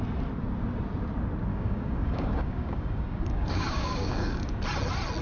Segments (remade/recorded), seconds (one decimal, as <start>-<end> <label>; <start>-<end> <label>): 0.0-1.5 recorded; 1.5-4.6 remade; 4.6-5.2 recorded